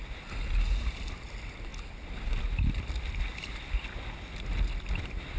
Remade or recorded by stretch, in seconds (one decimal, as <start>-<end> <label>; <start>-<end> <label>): 0.0-5.4 recorded